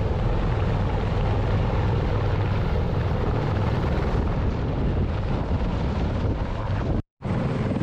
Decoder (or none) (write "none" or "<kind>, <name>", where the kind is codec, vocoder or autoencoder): vocoder, BigVGAN v2